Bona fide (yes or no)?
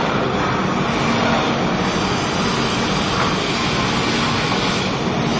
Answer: yes